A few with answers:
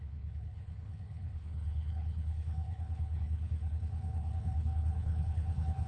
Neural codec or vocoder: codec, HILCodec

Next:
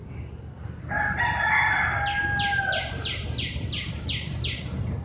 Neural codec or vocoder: none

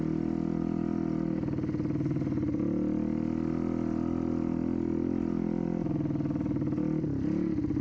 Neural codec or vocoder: none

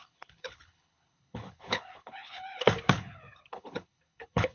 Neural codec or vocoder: codec, HILCodec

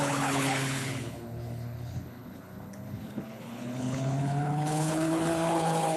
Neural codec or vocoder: codec, HILCodec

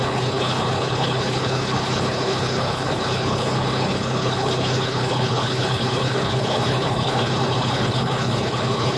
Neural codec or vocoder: codec, HILCodec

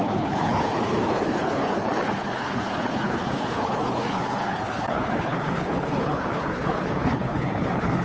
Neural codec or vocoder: codec, HILCodec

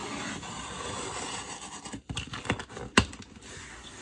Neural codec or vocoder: none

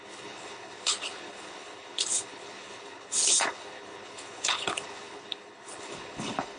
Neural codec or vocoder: codec, HILCodec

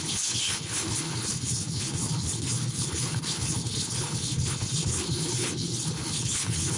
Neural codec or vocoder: codec, HILCodec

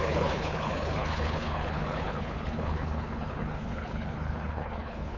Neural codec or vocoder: codec, HILCodec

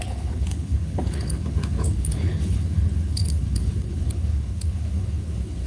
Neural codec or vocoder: codec, HILCodec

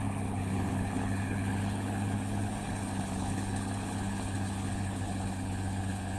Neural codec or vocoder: codec, HILCodec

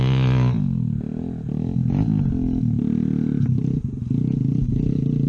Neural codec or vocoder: none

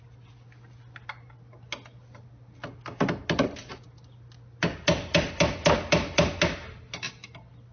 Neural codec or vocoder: none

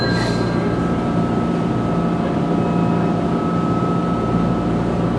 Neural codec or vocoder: none